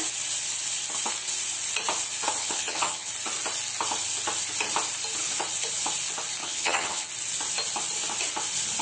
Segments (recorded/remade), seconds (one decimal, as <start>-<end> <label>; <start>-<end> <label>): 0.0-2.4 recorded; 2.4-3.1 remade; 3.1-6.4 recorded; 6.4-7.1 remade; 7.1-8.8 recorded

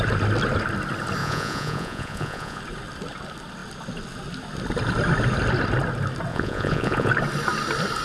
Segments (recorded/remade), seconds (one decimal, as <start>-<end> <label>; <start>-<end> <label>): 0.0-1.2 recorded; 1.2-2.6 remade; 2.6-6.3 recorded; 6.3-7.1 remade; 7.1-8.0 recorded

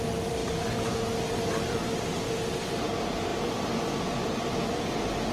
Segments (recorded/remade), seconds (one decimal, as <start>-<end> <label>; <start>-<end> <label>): 0.0-5.3 recorded

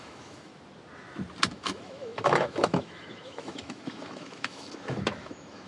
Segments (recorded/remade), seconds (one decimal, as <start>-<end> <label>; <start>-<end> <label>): 0.0-0.5 remade; 0.5-1.5 recorded; 1.5-5.7 remade

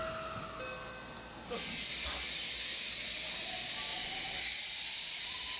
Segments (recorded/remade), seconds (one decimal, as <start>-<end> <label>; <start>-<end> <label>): 0.0-5.6 recorded